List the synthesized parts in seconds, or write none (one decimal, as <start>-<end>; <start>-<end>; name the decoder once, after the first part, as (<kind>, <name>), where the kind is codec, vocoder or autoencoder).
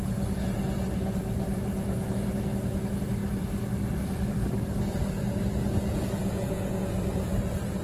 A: 6.2-6.9 (vocoder, Vocos)